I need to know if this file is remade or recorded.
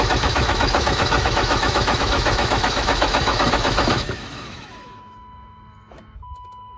remade